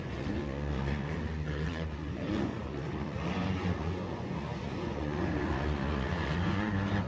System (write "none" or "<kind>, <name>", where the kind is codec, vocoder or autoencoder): vocoder, Vocos